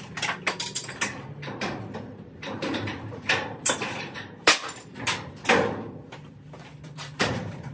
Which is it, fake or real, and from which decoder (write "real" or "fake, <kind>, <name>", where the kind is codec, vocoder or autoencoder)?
fake, vocoder, BigVGAN v2